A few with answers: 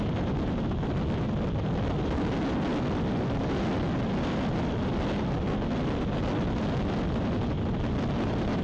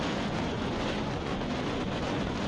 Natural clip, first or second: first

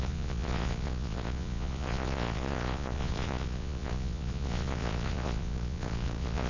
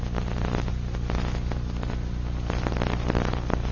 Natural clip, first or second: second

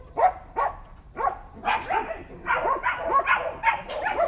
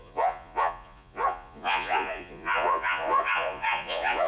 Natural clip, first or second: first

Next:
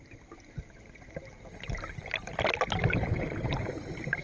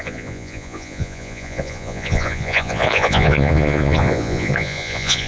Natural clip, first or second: first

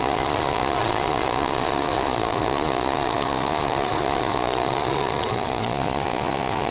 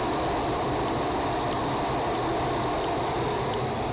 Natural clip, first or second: second